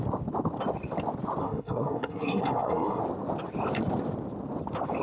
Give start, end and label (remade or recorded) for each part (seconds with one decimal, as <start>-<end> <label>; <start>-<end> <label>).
0.0-1.4 recorded; 1.4-3.0 remade; 3.0-5.0 recorded